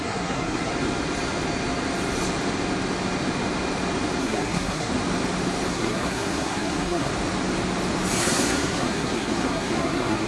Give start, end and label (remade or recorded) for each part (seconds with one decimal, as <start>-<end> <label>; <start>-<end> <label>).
0.0-0.7 remade; 0.7-4.2 recorded; 4.2-4.9 remade; 4.9-5.7 recorded; 5.7-7.1 remade; 7.1-8.2 recorded; 8.2-10.3 remade